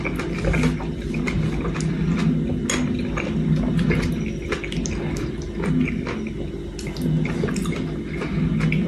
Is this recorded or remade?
recorded